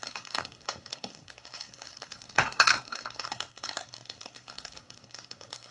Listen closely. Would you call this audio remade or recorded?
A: remade